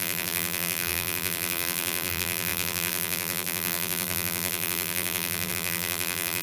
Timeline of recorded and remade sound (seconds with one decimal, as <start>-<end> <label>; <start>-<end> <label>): 0.0-6.4 remade